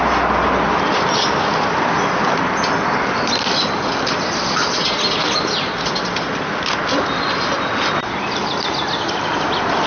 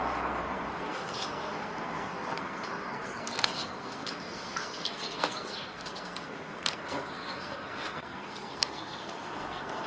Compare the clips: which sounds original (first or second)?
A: first